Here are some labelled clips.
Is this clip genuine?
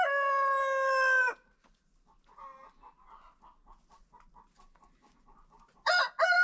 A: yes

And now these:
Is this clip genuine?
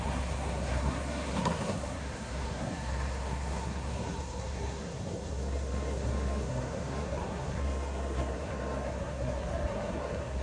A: no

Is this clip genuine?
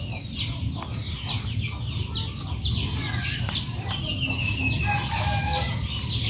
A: yes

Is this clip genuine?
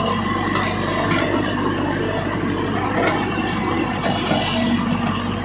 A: yes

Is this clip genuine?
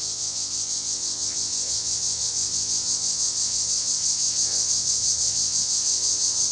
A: no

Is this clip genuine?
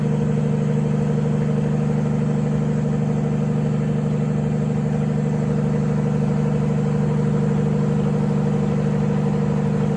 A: yes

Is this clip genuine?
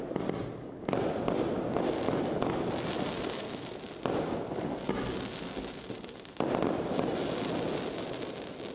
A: yes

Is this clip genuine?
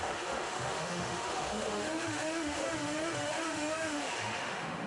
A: no